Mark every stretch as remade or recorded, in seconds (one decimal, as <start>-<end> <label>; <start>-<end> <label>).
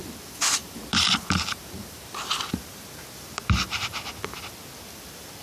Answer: 0.0-0.6 recorded; 0.6-3.8 remade; 3.8-5.4 recorded